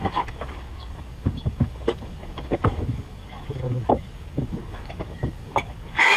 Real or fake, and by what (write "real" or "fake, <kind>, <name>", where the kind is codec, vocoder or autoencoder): fake, codec, DAC